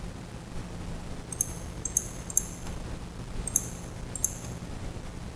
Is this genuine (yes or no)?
yes